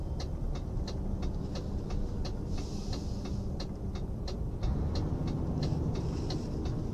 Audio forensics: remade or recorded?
recorded